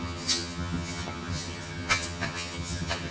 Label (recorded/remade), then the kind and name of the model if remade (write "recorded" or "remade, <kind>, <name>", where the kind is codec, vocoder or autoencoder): remade, vocoder, HiFi-GAN